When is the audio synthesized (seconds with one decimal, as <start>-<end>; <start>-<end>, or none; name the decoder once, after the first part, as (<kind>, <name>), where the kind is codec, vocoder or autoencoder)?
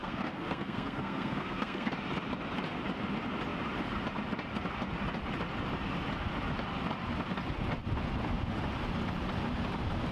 0.0-1.9 (codec, SNAC)